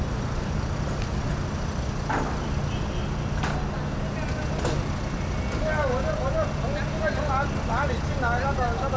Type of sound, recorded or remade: recorded